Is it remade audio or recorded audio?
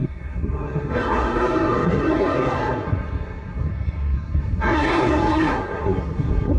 remade